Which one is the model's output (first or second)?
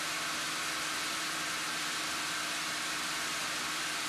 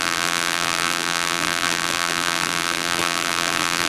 second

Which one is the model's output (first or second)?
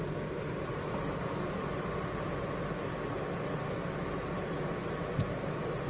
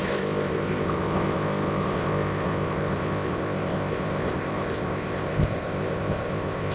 second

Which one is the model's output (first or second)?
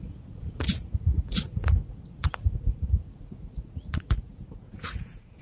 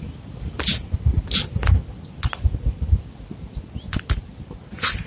first